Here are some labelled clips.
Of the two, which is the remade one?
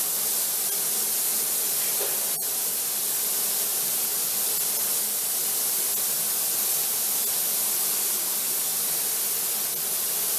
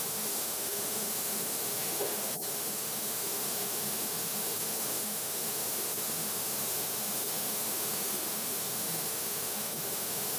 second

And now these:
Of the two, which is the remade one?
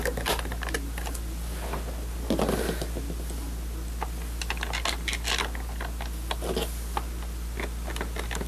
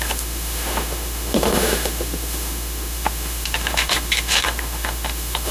second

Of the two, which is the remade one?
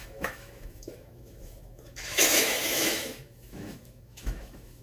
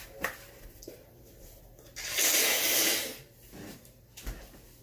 first